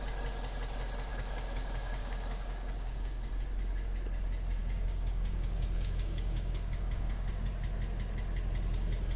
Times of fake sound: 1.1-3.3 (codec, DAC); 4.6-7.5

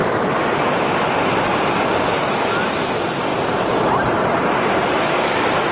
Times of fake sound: none